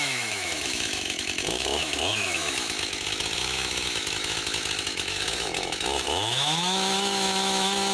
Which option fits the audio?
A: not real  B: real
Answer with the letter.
A